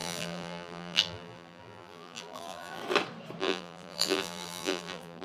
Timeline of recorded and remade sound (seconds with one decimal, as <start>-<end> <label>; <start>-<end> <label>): 0.0-2.8 remade; 2.8-3.4 recorded; 3.4-5.2 remade